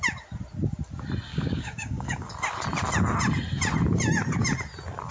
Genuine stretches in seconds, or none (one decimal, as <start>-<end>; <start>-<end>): 0.0-1.3; 2.3-5.1